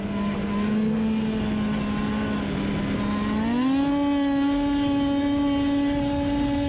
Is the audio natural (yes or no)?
yes